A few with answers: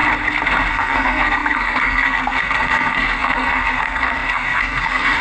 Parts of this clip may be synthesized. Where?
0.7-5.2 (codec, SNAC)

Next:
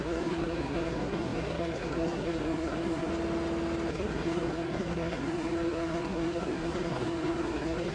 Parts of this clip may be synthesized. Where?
0.0-3.1 (codec, SNAC); 3.9-7.9

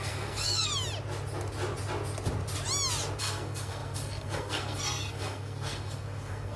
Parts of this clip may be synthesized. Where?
0.0-0.7 (codec, SNAC); 3.2-6.6

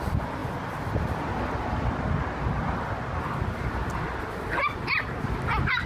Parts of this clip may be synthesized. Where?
none